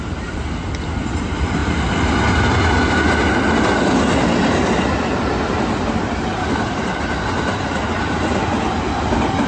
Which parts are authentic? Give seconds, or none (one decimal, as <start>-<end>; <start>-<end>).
0.0-9.5